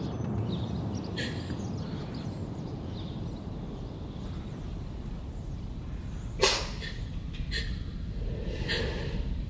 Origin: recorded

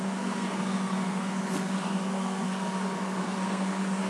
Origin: remade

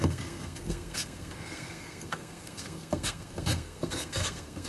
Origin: remade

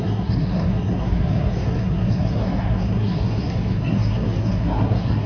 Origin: remade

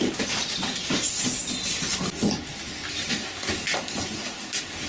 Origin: recorded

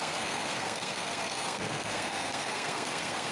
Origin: remade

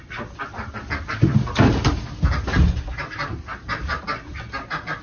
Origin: recorded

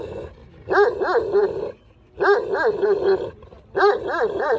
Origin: recorded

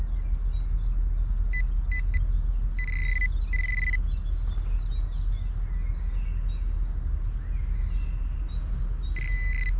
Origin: recorded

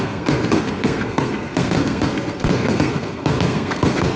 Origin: remade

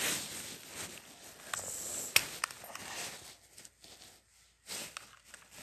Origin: recorded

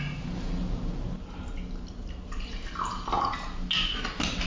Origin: recorded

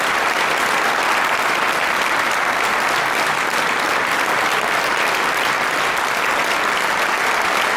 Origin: recorded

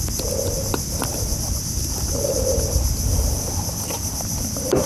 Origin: recorded